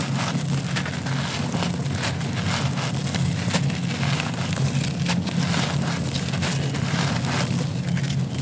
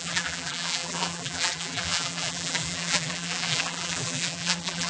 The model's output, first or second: second